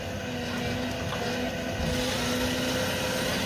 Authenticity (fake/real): real